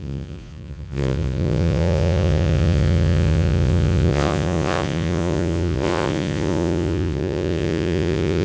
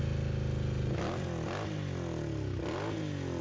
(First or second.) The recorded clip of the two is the second